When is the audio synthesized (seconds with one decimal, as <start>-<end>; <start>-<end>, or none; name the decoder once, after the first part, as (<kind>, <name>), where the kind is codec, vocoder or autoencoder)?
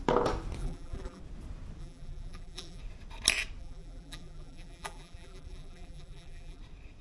0.6-1.2 (vocoder, BigVGAN v2); 1.8-2.8; 3.6-6.6